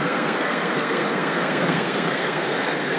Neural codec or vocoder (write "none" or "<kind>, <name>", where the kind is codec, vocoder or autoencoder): codec, SNAC